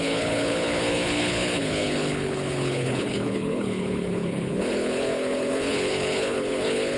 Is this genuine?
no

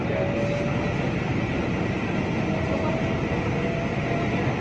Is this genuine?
yes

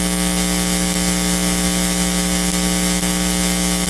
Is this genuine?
yes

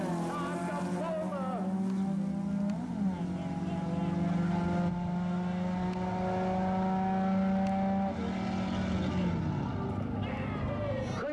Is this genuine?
yes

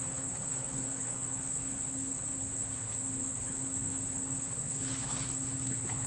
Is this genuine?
no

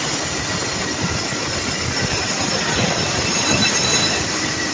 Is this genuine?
yes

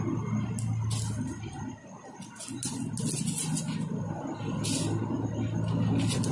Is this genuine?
yes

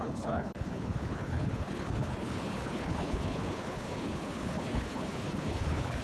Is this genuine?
no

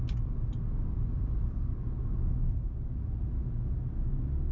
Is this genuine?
yes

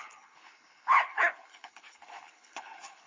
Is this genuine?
no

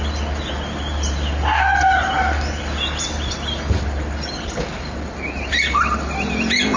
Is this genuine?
yes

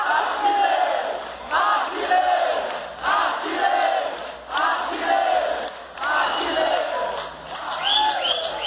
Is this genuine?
yes